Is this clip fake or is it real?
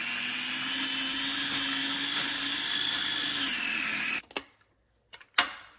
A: real